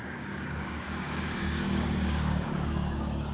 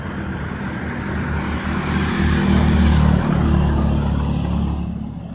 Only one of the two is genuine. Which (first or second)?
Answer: second